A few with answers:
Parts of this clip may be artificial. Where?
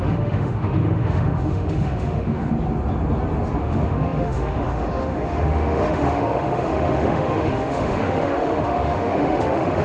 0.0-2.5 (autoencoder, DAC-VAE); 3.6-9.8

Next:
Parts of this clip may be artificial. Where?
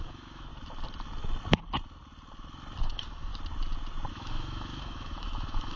0.0-0.5 (autoencoder, DAC-VAE); 2.8-3.3; 4.1-5.8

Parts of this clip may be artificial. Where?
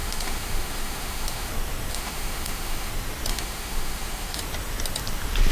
0.0-1.5 (autoencoder, DAC-VAE); 1.9-2.9; 3.3-4.4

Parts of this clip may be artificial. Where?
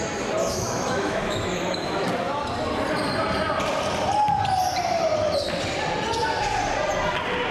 0.4-2.1 (autoencoder, DAC-VAE)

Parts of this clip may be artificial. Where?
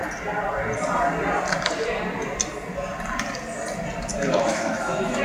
4.1-5.2 (autoencoder, DAC-VAE)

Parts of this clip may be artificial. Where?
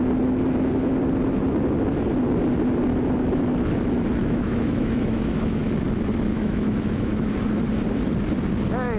4.2-5.6 (autoencoder, DAC-VAE); 6.3-7.3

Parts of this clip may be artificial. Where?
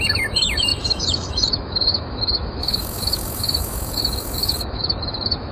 0.0-5.5 (autoencoder, DAC-VAE)